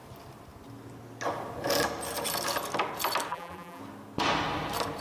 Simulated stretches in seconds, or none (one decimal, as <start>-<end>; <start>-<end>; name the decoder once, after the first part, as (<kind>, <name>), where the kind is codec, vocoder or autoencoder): 3.3-3.8 (vocoder, BigVGAN v2)